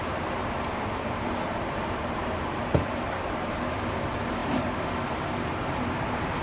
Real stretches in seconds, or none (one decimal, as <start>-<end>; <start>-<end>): none